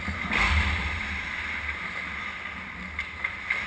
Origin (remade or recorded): recorded